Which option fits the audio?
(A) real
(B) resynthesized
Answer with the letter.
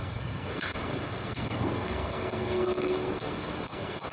B